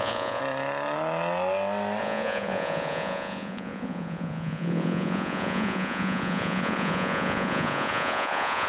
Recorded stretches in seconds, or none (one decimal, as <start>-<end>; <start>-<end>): 0.4-2.0